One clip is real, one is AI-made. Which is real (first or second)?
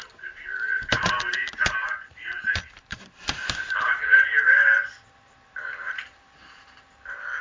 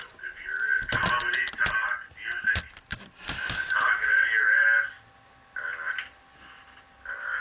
second